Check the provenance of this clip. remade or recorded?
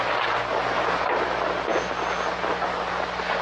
recorded